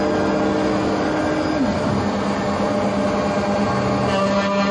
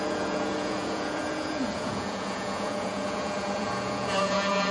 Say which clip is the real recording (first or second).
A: first